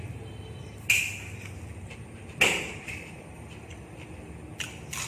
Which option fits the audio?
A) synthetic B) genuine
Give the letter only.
B